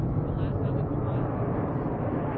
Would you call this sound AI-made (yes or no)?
no